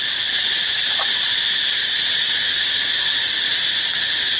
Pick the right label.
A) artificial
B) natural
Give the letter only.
B